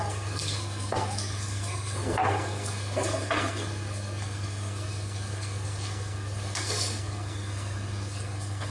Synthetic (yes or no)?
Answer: yes